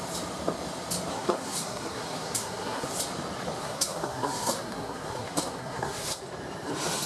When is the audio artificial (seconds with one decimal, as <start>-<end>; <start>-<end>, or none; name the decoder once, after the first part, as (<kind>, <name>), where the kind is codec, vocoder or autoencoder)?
1.1-2.9 (codec, SNAC); 3.6-6.2